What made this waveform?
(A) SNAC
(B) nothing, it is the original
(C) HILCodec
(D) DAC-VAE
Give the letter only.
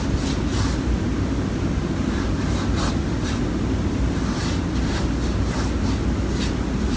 B